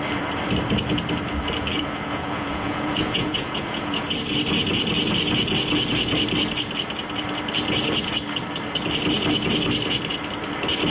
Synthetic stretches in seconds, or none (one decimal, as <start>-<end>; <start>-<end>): 1.7-4.0